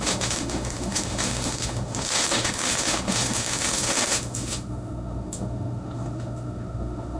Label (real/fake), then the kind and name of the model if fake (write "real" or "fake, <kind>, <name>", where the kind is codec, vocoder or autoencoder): fake, autoencoder, DAC-VAE